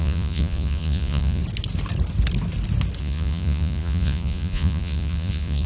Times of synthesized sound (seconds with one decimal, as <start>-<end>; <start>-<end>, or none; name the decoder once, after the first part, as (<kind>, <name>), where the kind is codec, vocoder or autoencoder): 0.0-1.4 (vocoder, Vocos); 3.0-5.7